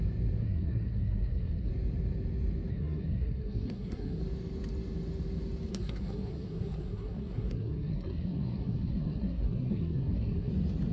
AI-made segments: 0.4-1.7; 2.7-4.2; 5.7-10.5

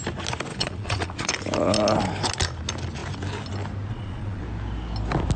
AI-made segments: 0.5-1.3; 3.9-4.4

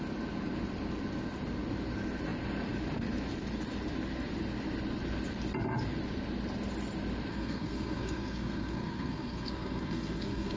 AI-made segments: 7.3-10.6

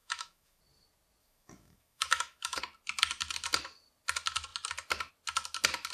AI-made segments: 0.0-0.6; 1.2-2.6